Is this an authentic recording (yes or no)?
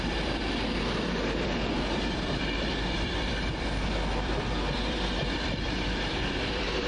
no